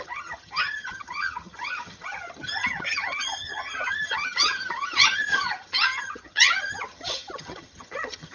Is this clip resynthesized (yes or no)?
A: yes